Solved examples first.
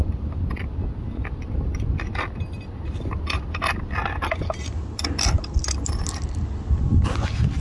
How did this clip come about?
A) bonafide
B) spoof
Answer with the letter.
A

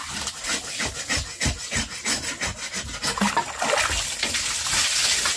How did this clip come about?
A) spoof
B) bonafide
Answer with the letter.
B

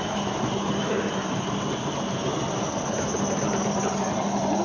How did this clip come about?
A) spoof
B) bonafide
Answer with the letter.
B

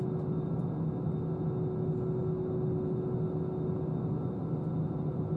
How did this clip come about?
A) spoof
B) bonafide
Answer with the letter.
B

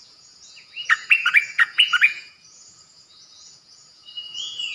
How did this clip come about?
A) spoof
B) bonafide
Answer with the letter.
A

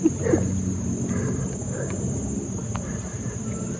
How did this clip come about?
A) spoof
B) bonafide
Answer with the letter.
B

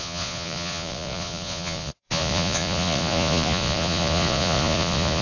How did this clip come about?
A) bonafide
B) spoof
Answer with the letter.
B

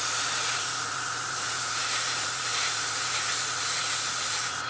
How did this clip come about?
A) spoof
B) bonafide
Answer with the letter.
A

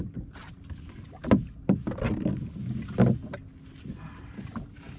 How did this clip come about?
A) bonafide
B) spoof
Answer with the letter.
A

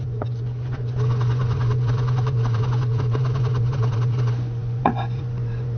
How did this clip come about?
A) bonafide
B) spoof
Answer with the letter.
B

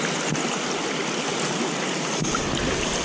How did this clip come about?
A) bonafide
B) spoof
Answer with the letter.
A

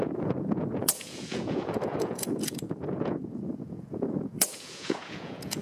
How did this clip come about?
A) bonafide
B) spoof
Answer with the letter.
B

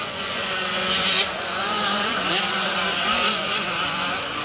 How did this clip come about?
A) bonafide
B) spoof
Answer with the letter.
B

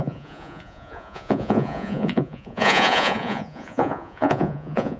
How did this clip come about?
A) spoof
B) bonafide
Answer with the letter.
A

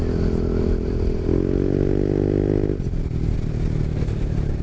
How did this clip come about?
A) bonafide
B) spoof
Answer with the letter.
A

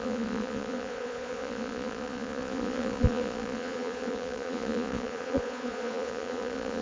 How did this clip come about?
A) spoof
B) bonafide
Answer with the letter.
A